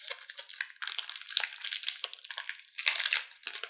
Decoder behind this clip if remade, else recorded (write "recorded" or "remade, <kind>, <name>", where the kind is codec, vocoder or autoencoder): recorded